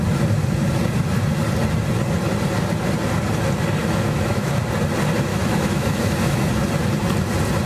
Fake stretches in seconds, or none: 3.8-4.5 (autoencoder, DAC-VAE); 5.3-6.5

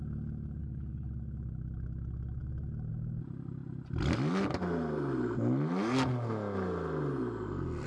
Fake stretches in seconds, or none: 0.6-1.1 (codec, HILCodec)

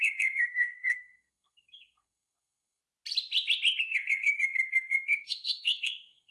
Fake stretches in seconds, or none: 0.0-2.8 (codec, SNAC); 3.8-6.3

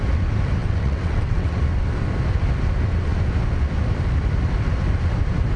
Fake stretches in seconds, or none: 0.6-1.6 (vocoder, WaveNeXt)

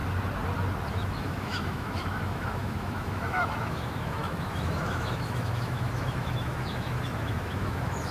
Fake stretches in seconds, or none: 0.9-8.1 (autoencoder, DAC-VAE)

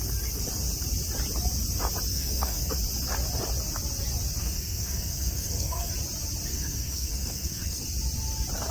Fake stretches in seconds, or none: 2.1-2.7 (codec, SNAC); 4.4-5.9; 6.5-7.8